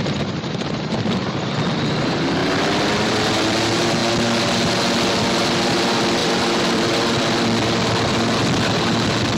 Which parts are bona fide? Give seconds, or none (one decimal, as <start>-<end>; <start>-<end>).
2.4-3.0; 4.0-5.1